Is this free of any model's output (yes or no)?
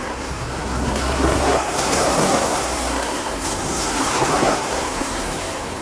no